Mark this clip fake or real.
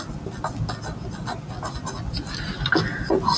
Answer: real